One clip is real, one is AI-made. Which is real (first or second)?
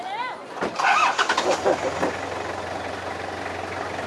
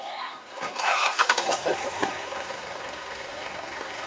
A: first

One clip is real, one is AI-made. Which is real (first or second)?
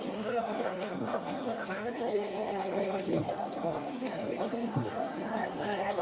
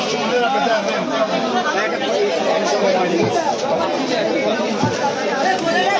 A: second